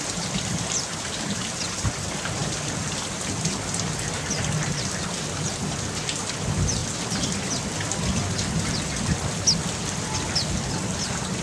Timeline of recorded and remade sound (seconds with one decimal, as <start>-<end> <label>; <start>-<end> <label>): 0.0-11.4 recorded